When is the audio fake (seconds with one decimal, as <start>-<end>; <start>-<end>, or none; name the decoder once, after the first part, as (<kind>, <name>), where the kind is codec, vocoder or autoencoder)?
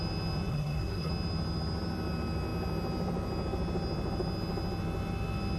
0.5-1.1 (codec, SNAC)